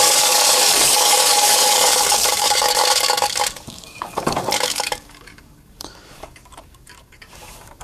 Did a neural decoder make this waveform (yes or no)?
yes